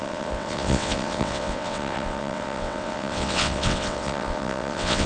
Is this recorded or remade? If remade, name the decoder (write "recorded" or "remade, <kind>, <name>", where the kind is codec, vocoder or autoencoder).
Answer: remade, vocoder, WaveNeXt